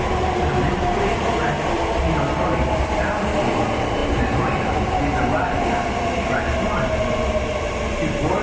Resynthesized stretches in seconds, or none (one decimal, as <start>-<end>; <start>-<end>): none